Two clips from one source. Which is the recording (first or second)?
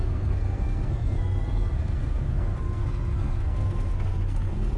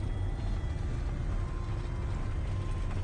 second